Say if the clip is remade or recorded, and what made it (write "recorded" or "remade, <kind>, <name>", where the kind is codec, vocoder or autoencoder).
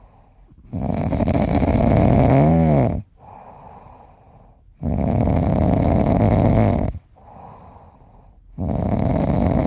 recorded